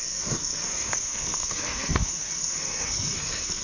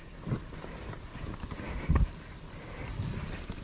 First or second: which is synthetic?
first